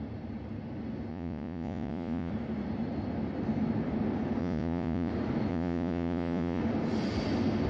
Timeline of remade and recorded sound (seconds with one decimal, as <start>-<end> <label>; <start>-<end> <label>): 0.0-1.1 recorded; 1.1-2.3 remade; 2.3-4.4 recorded; 4.4-5.1 remade; 5.1-5.5 recorded; 5.5-6.6 remade; 6.6-7.7 recorded